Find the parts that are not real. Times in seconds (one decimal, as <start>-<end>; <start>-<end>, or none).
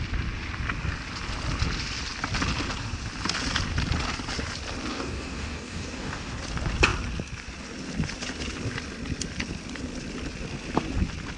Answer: 4.9-6.4